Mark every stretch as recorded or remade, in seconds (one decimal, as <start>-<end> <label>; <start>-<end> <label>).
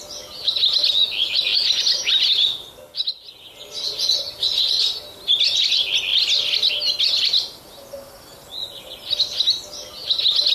0.0-10.5 recorded